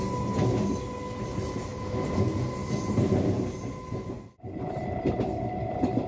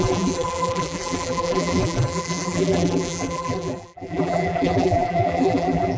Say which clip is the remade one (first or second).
second